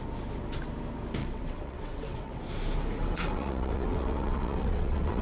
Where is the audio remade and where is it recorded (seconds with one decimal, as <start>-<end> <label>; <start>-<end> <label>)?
0.0-1.2 recorded; 1.2-2.4 remade; 2.4-3.0 recorded; 3.0-5.2 remade